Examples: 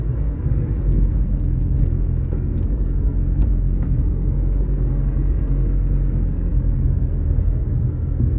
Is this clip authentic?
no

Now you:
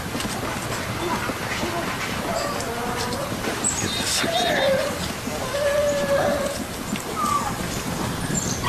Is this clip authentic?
yes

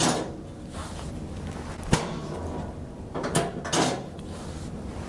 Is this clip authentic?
yes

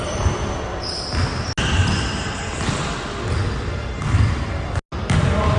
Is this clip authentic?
yes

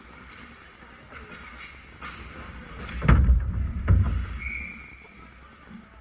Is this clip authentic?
yes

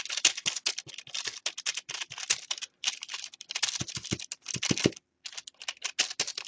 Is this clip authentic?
yes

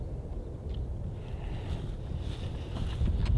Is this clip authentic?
yes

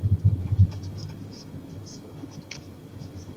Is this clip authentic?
no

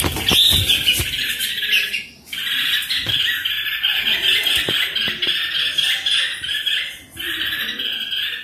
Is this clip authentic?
yes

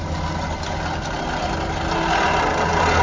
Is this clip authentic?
yes